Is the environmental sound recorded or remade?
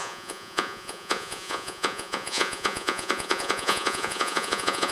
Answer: remade